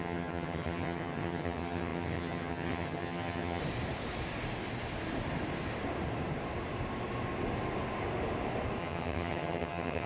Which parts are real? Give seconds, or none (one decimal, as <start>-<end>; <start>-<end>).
3.6-8.8